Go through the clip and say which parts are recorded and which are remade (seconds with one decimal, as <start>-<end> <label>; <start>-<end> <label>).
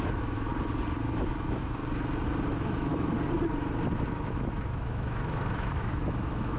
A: 0.0-0.5 remade; 0.5-1.0 recorded; 1.0-1.8 remade; 1.8-2.5 recorded; 2.5-2.9 remade; 2.9-4.2 recorded; 4.2-6.6 remade